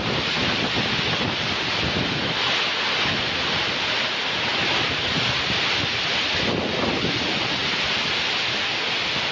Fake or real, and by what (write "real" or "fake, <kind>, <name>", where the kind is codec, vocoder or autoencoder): real